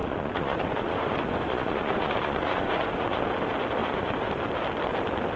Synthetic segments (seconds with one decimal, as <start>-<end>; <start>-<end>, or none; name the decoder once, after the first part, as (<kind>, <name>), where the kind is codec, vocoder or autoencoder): 0.0-3.2 (vocoder, Vocos); 3.8-4.3